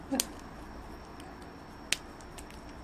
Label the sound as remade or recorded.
recorded